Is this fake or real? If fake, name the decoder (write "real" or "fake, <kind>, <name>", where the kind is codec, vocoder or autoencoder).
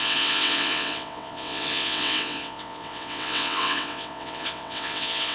fake, vocoder, WaveNeXt